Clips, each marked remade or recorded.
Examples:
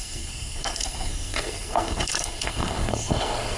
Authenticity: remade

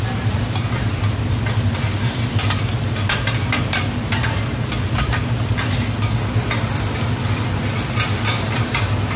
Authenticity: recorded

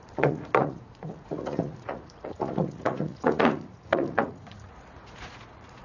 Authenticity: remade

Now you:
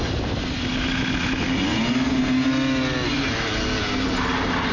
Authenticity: recorded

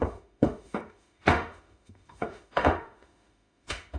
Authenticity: remade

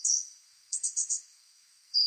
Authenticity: remade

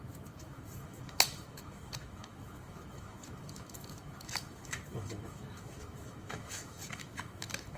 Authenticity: remade